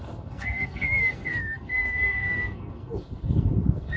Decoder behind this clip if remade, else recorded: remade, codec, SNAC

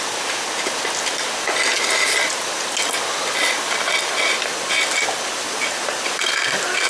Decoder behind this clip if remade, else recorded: recorded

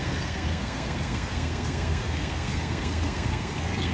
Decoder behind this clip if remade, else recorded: remade, codec, SNAC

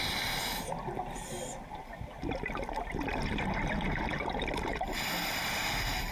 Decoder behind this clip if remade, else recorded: recorded